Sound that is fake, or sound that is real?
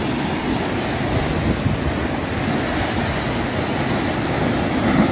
real